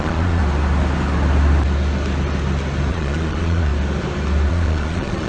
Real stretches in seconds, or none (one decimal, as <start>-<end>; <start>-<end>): 0.4-2.9; 3.7-4.5